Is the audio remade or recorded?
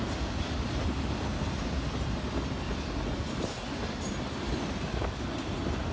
recorded